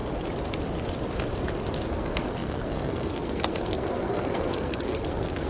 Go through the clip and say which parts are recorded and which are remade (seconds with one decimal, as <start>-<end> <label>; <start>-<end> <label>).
0.0-1.9 recorded; 1.9-5.5 remade